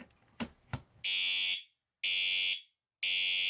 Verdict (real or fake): real